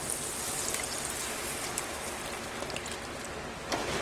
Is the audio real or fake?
real